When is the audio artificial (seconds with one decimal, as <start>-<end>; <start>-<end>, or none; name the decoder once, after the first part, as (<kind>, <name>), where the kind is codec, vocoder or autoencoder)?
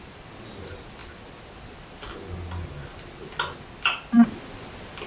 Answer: none